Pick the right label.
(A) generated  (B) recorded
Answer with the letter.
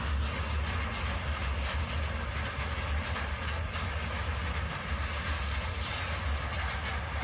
B